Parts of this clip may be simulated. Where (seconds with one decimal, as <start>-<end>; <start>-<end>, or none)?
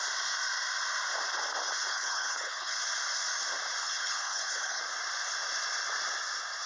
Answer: 1.9-2.8; 3.8-4.8